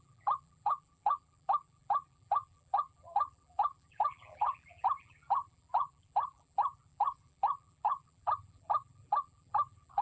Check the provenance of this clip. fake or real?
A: fake